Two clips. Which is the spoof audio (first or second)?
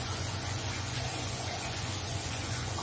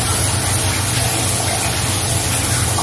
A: first